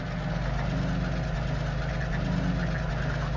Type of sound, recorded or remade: recorded